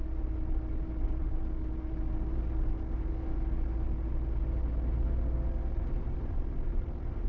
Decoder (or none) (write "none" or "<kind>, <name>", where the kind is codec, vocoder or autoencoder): none